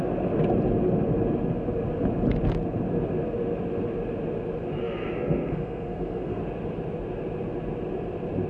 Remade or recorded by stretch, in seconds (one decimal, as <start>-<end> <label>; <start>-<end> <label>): 0.0-4.8 recorded; 4.8-6.4 remade; 6.4-8.5 recorded